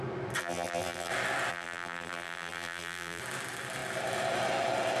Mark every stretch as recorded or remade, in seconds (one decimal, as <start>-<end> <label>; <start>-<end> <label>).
0.0-0.4 recorded; 0.4-1.1 remade; 1.1-1.5 recorded; 1.5-3.2 remade; 3.2-5.0 recorded